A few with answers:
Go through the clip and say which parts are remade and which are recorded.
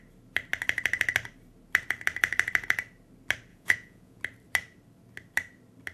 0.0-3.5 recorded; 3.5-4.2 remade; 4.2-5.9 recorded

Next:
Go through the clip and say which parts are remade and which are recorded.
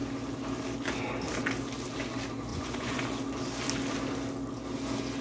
0.0-2.5 recorded; 2.5-3.0 remade; 3.0-5.2 recorded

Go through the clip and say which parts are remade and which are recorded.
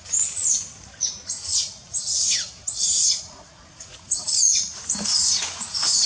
0.0-1.5 remade; 1.5-3.3 recorded; 3.3-6.1 remade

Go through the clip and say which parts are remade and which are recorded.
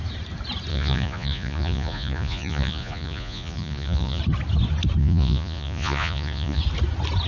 0.0-0.7 recorded; 0.7-4.2 remade; 4.2-5.0 recorded; 5.0-6.6 remade; 6.6-7.3 recorded